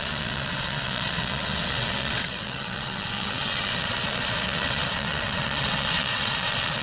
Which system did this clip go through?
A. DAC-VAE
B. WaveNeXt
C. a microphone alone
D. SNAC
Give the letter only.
B